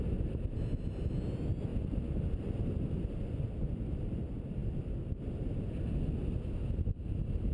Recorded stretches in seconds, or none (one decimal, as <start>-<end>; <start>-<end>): 0.0-7.5